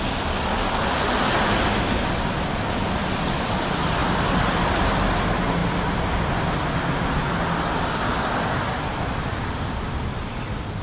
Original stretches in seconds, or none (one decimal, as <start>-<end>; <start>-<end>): 0.0-10.8